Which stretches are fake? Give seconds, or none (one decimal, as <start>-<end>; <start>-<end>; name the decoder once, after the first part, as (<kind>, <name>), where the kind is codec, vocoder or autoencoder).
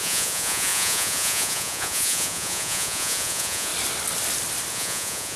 0.0-3.7 (vocoder, Vocos); 4.7-5.4